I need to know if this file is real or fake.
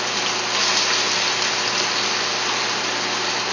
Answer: real